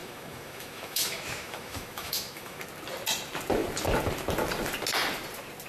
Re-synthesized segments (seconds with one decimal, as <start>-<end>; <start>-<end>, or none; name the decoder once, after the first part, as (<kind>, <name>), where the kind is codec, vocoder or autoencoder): 0.0-2.6 (autoencoder, DAC-VAE)